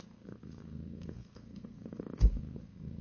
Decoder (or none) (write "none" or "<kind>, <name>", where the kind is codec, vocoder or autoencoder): codec, SNAC